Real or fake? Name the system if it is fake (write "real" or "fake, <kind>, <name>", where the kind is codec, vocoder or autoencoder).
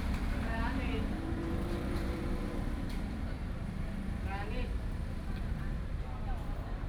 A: fake, vocoder, BigVGAN v2